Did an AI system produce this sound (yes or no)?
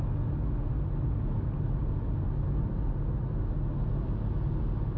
no